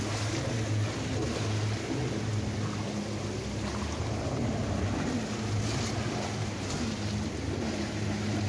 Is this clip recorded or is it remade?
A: recorded